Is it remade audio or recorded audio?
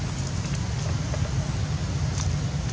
recorded